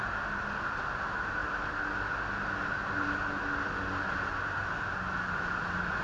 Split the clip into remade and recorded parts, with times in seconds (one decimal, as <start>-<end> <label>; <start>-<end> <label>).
0.0-1.4 recorded; 1.4-1.9 remade; 1.9-6.0 recorded